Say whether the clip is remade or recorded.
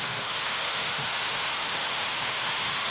remade